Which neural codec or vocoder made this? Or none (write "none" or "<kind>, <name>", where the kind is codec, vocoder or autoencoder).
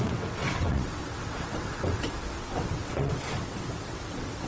vocoder, WaveNeXt